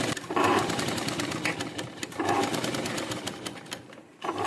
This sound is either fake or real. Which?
fake